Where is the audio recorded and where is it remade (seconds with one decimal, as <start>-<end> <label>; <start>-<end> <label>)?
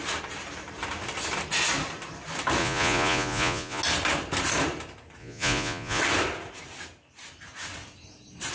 0.0-2.6 recorded; 2.6-3.8 remade; 3.8-5.2 recorded; 5.2-6.0 remade; 6.0-8.5 recorded